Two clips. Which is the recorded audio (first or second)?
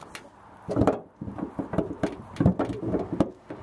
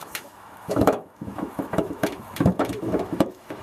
first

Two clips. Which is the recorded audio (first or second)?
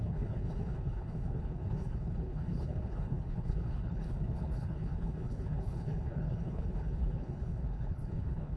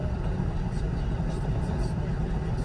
second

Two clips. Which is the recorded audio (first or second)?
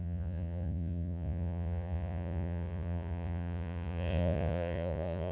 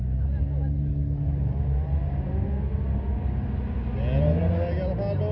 second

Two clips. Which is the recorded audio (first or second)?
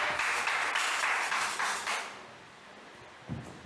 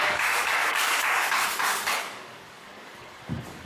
first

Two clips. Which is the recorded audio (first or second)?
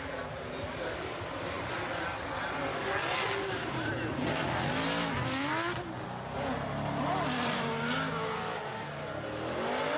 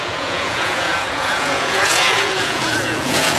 first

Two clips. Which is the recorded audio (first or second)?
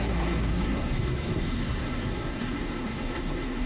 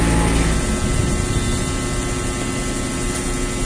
second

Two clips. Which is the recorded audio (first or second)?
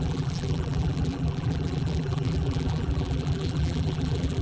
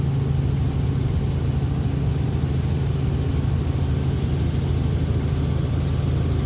second